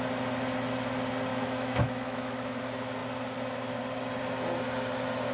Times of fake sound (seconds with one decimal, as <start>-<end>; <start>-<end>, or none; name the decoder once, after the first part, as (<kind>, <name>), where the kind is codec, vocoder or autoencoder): 1.3-2.6 (autoencoder, DAC-VAE)

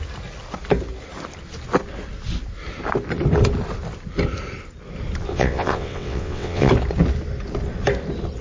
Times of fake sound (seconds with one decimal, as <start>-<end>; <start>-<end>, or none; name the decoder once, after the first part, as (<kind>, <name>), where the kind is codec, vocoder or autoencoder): 5.3-6.7 (vocoder, WaveNeXt)

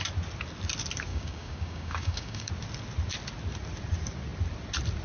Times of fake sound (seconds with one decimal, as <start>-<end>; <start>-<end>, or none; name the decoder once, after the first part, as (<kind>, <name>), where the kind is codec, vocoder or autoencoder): 1.1-2.5 (codec, DAC)

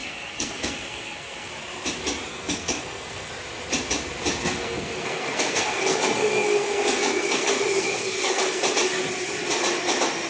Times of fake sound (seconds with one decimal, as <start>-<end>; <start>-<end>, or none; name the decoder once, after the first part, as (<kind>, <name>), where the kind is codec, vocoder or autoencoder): 0.0-1.5 (codec, SNAC); 2.3-3.3; 4.4-8.6

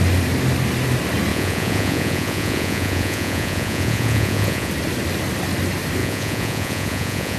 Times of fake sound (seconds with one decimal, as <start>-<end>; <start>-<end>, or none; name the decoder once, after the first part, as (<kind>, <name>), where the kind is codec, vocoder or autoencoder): 1.3-4.7 (vocoder, Vocos); 6.0-7.4

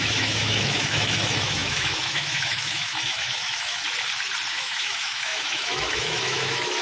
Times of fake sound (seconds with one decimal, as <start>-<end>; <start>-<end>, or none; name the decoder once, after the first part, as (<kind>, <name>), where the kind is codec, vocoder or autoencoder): 0.0-3.8 (autoencoder, DAC-VAE); 4.5-6.8

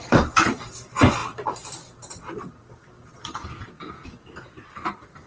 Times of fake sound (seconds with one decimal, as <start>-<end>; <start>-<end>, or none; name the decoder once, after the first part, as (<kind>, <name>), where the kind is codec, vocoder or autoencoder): 0.0-5.3 (vocoder, BigVGAN v2)